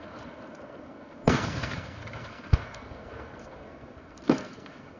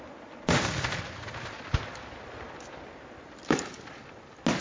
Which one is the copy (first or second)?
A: first